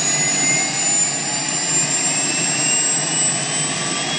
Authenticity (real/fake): real